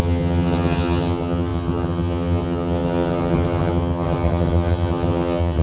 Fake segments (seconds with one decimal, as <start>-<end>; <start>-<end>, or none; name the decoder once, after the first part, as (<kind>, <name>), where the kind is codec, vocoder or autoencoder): 0.0-5.6 (vocoder, HiFi-GAN)